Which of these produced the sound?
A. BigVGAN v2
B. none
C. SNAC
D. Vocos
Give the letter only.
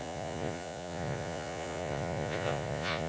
D